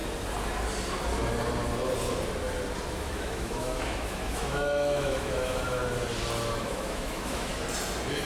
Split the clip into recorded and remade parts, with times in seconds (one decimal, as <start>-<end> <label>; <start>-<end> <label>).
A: 0.0-2.9 recorded; 2.9-5.8 remade; 5.8-6.6 recorded; 6.6-7.5 remade; 7.5-8.3 recorded